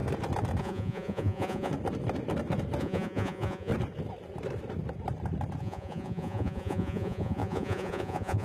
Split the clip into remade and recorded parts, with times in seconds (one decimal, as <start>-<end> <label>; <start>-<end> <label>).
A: 0.0-0.6 recorded; 0.6-1.7 remade; 1.7-2.8 recorded; 2.8-3.7 remade; 3.7-5.6 recorded; 5.6-8.4 remade